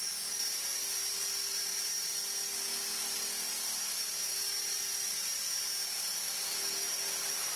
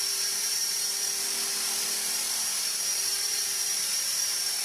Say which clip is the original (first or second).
first